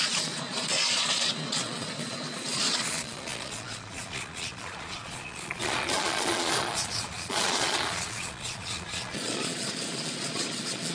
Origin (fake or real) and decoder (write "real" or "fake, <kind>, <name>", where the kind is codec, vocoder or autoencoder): fake, vocoder, Vocos